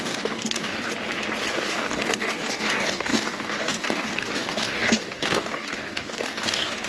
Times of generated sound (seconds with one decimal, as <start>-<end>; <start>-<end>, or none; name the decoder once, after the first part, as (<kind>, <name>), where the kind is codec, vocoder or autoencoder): 0.0-0.9 (codec, DAC); 1.5-6.9